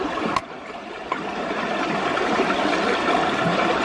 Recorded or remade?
recorded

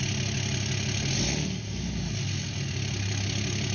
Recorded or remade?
recorded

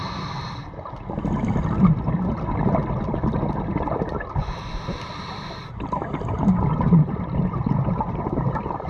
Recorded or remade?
recorded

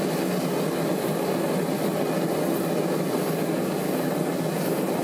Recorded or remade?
recorded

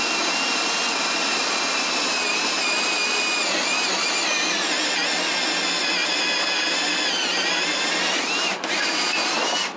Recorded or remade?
recorded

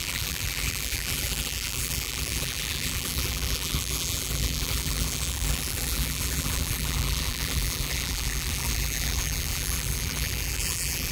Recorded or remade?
remade